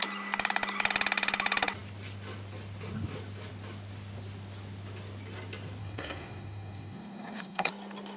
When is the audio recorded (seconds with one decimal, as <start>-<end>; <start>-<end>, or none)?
0.0-5.8; 7.7-8.2